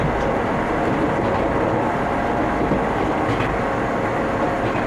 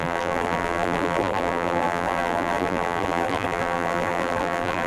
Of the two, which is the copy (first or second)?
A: second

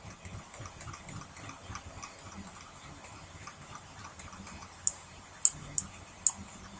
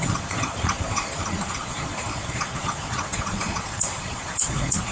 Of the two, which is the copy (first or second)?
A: second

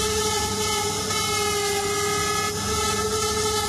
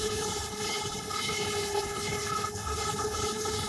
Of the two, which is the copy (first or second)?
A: second